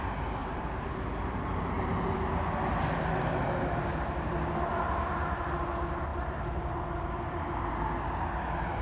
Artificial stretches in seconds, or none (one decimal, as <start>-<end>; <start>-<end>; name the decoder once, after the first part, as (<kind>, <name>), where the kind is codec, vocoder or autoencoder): 0.4-1.0 (vocoder, BigVGAN v2); 6.1-7.1